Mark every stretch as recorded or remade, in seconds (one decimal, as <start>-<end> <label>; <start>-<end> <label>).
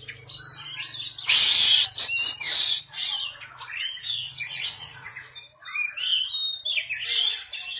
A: 0.0-2.6 recorded; 2.6-5.1 remade; 5.1-7.8 recorded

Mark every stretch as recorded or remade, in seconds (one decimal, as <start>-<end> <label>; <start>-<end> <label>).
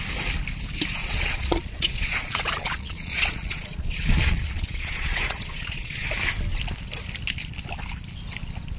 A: 0.0-1.0 recorded; 1.0-6.1 remade; 6.1-8.8 recorded